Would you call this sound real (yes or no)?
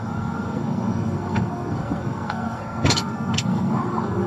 no